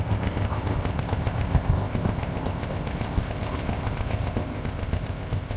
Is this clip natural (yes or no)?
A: no